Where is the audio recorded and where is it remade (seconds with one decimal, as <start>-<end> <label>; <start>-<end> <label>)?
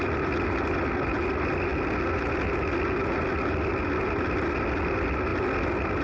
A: 0.0-6.0 recorded